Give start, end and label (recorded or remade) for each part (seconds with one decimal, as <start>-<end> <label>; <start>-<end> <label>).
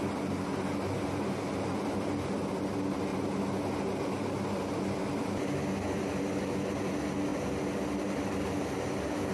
0.0-9.3 recorded